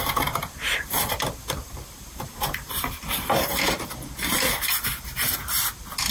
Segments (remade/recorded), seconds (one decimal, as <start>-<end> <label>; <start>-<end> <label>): 0.0-0.4 recorded; 0.4-3.6 remade; 3.6-6.1 recorded

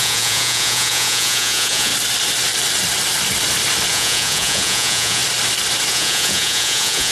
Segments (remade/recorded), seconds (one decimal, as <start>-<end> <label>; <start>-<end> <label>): 0.0-1.9 remade; 1.9-3.9 recorded; 3.9-5.2 remade; 5.2-5.9 recorded; 5.9-7.1 remade

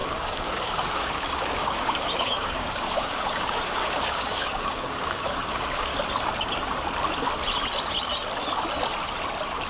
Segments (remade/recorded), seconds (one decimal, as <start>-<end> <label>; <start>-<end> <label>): 0.0-5.9 remade; 5.9-9.7 recorded

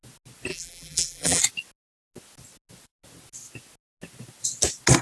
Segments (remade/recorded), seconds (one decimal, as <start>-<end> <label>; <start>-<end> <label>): 0.0-0.5 recorded; 0.5-1.4 remade; 1.4-5.0 recorded

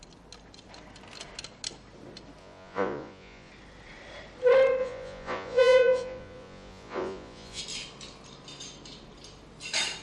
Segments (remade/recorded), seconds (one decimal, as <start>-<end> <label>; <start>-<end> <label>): 0.0-2.4 recorded; 2.4-3.5 remade; 3.5-4.8 recorded; 4.8-7.6 remade; 7.6-10.0 recorded

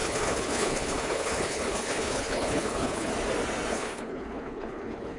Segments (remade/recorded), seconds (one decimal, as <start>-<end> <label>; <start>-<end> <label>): 0.0-3.1 remade; 3.1-3.7 recorded; 3.7-5.2 remade